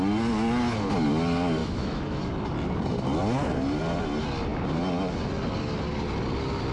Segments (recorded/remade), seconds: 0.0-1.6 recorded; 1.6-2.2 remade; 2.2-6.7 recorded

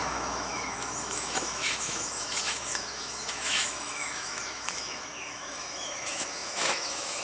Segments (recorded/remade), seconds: 0.0-7.2 remade